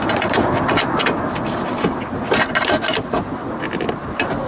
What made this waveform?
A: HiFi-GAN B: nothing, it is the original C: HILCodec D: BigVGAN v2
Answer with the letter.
B